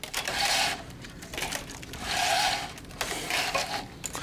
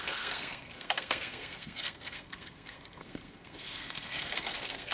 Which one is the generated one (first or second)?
second